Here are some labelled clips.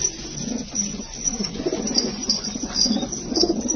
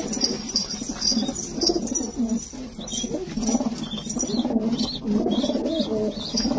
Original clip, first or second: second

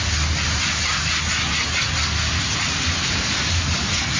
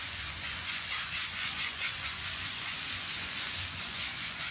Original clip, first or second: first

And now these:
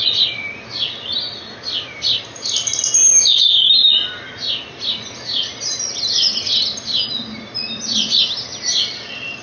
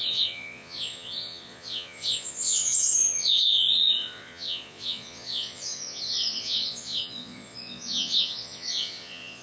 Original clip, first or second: first